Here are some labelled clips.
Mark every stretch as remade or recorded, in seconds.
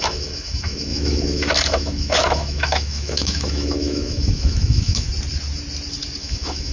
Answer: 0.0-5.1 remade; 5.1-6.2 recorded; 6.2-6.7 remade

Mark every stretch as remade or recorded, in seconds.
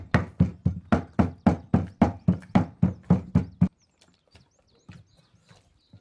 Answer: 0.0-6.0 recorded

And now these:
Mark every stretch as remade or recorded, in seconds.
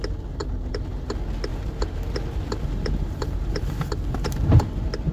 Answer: 0.0-0.4 recorded; 0.4-1.1 remade; 1.1-1.5 recorded; 1.5-4.6 remade; 4.6-5.1 recorded